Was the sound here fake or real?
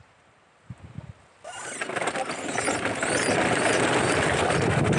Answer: real